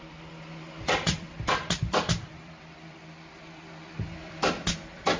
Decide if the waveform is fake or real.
fake